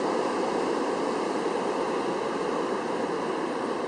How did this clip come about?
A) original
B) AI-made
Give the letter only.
A